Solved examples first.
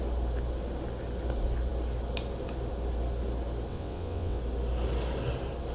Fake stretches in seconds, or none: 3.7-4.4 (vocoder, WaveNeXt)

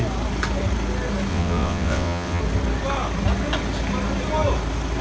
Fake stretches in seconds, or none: 1.3-2.4 (vocoder, WaveNeXt)

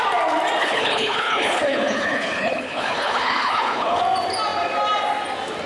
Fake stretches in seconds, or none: 0.6-4.0 (codec, HILCodec)

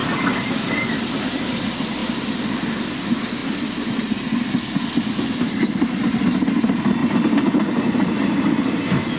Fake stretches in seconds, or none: none

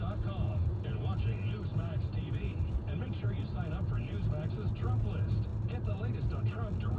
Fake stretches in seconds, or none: 1.7-3.6 (vocoder, BigVGAN v2); 5.5-6.4

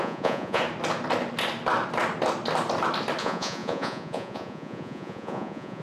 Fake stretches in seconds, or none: 0.0-0.6 (vocoder, Vocos); 3.2-5.8

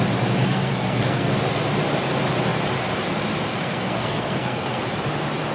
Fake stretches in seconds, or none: 0.4-1.3 (codec, SNAC); 3.5-4.8

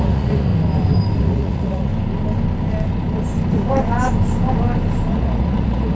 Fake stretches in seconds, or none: 0.0-0.5 (vocoder, Vocos); 1.2-1.9; 5.1-5.9